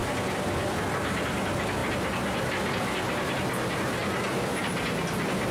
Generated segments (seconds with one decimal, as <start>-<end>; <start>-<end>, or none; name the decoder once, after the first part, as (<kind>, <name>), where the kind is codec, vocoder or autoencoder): 4.0-4.6 (vocoder, BigVGAN v2)